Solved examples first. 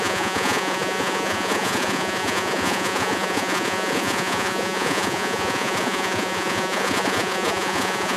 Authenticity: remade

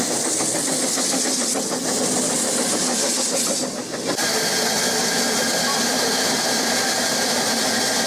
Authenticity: recorded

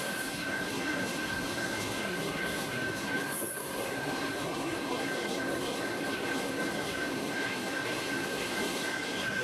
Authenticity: remade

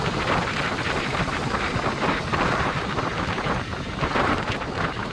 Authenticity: remade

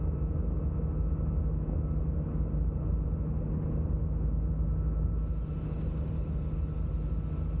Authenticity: recorded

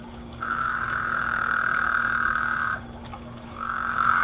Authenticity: remade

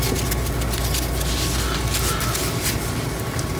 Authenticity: recorded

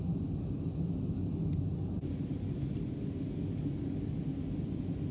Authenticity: recorded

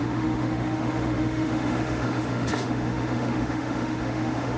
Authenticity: remade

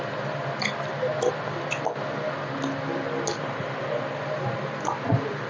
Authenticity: recorded